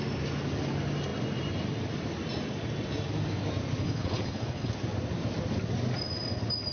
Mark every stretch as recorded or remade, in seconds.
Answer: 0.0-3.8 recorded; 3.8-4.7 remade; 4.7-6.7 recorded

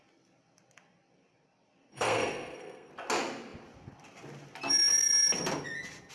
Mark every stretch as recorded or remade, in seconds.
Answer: 0.0-1.9 recorded; 1.9-2.9 remade; 2.9-6.1 recorded

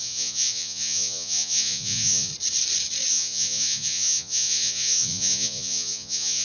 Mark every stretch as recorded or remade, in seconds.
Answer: 0.0-2.3 remade; 2.3-3.1 recorded; 3.1-6.4 remade

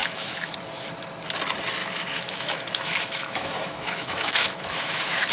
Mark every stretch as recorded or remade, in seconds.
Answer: 0.0-0.5 remade; 0.5-1.8 recorded; 1.8-5.3 remade

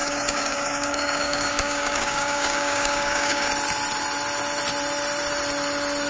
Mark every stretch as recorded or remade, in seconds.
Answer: 0.0-3.5 remade; 3.5-6.1 recorded